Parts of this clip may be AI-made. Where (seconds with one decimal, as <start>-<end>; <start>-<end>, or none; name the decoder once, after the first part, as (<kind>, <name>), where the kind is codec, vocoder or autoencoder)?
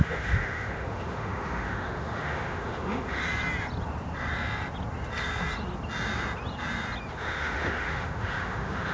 0.0-3.2 (autoencoder, DAC-VAE); 7.1-8.9